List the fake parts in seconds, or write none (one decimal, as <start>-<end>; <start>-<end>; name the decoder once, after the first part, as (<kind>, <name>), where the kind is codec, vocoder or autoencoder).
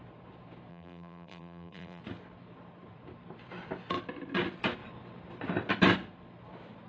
0.7-2.0 (vocoder, BigVGAN v2)